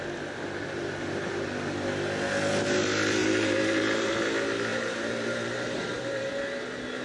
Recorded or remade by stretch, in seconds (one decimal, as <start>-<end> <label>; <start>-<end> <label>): 0.0-3.2 recorded; 3.2-4.1 remade; 4.1-4.7 recorded; 4.7-6.3 remade; 6.3-7.0 recorded